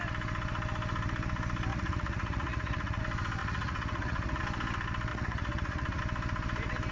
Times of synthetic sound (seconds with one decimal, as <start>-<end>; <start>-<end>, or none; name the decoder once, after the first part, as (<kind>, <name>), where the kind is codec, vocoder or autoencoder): 1.7-3.0 (vocoder, Vocos); 3.4-4.4; 5.1-6.0